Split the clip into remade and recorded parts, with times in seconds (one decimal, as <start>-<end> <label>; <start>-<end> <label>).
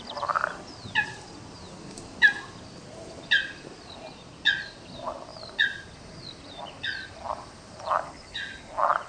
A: 0.0-9.1 recorded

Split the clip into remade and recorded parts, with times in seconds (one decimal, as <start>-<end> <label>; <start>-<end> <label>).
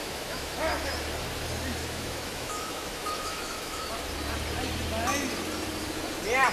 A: 0.0-0.9 remade; 0.9-1.8 recorded; 1.8-3.9 remade; 3.9-6.5 recorded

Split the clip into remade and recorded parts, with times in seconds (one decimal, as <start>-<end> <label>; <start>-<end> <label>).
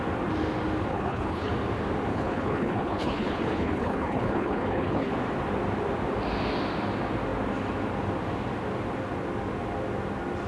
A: 0.0-0.9 recorded; 0.9-1.5 remade; 1.5-2.1 recorded; 2.1-5.1 remade; 5.1-10.5 recorded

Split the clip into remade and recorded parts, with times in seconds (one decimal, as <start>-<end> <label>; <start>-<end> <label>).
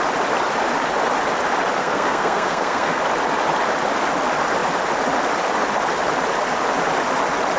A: 0.0-1.8 recorded; 1.8-3.0 remade; 3.0-7.6 recorded